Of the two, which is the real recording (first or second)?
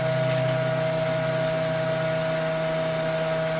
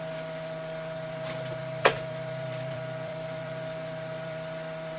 first